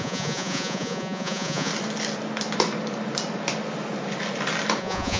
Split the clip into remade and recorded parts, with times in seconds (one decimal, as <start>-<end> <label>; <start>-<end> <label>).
0.0-1.7 remade; 1.7-4.8 recorded; 4.8-5.2 remade